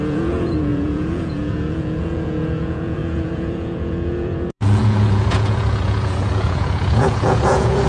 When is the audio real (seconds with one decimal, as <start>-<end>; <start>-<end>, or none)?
none